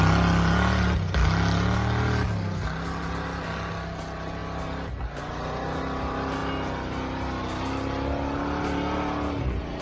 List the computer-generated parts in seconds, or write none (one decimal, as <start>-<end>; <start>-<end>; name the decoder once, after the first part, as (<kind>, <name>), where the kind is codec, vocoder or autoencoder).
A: none